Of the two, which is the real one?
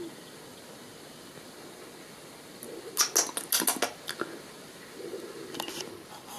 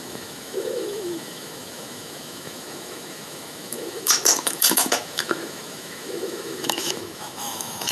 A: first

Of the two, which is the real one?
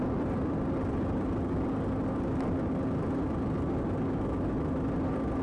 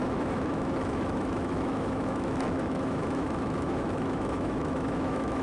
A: first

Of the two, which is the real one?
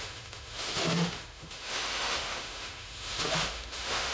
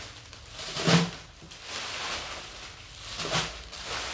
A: second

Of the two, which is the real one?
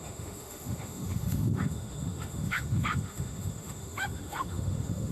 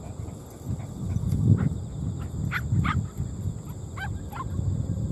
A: second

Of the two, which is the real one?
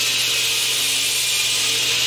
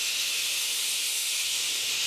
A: first